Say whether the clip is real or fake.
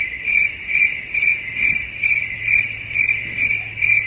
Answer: real